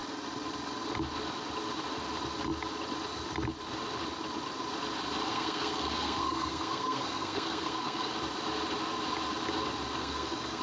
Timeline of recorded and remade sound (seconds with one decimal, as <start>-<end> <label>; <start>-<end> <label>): 0.0-5.3 recorded; 5.3-8.1 remade; 8.1-10.0 recorded; 10.0-10.6 remade